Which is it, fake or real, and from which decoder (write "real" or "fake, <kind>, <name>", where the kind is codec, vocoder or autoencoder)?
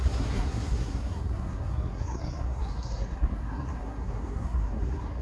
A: fake, codec, SNAC